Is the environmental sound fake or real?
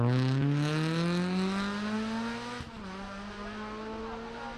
real